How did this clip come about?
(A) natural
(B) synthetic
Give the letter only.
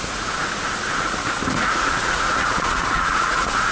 B